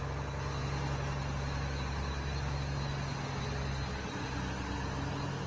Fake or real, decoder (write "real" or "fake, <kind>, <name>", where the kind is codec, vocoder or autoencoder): real